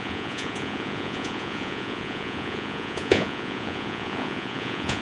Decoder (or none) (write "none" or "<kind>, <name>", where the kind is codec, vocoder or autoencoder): vocoder, Vocos